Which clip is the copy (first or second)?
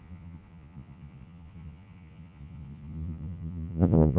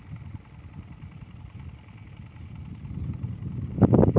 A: first